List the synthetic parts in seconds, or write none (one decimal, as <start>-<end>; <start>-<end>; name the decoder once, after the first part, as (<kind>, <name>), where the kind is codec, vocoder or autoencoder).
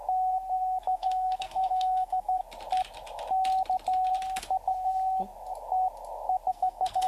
0.8-2.4 (codec, SNAC); 6.5-7.1